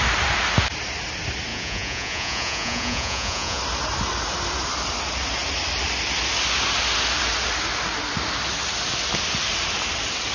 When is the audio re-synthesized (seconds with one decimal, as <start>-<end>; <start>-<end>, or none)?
1.5-3.6